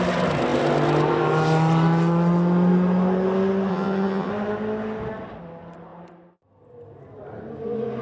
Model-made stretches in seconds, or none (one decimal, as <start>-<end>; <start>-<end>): 3.7-4.3